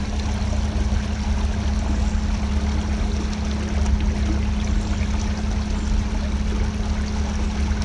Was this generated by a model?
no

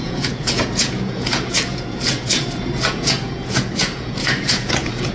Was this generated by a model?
yes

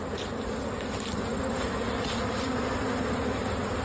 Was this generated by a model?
no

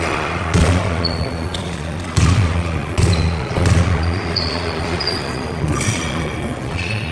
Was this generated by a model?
yes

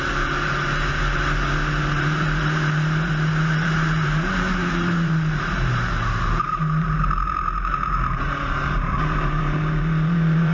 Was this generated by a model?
yes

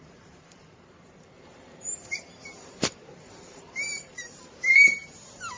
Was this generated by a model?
yes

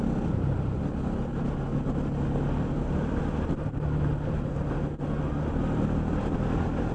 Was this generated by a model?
no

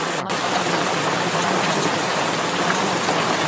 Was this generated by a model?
no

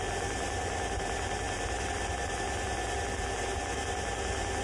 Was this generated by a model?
no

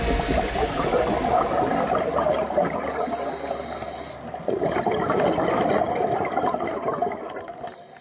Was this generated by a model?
no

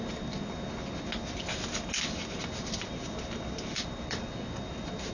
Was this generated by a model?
no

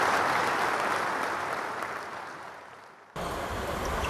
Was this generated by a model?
no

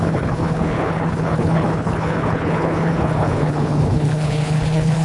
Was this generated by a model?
yes